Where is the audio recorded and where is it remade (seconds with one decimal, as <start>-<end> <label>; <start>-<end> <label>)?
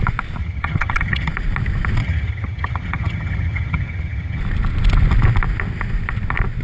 0.0-0.4 recorded; 0.4-1.3 remade; 1.3-2.0 recorded; 2.0-4.4 remade; 4.4-6.6 recorded